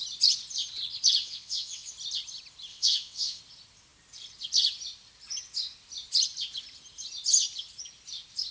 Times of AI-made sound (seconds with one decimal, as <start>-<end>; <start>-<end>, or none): 1.2-1.9; 2.7-3.4